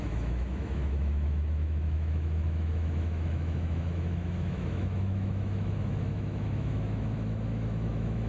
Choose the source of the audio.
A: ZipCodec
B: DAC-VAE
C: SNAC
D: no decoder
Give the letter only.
B